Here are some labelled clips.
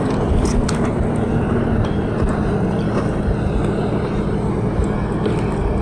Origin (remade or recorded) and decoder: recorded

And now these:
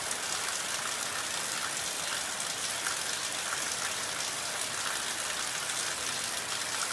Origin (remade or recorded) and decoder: recorded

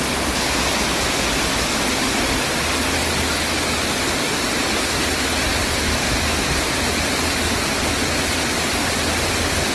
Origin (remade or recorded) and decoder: recorded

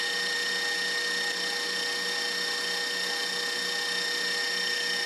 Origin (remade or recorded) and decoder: recorded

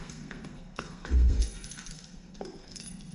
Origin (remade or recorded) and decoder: remade, codec, SNAC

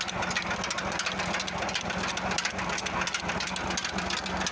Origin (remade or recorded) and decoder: recorded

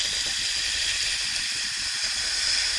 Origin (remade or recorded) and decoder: recorded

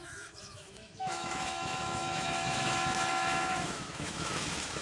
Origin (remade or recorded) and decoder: remade, autoencoder, DAC-VAE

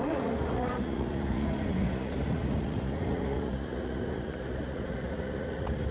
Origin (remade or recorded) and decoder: remade, vocoder, Vocos